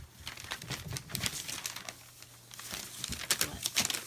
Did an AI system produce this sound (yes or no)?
no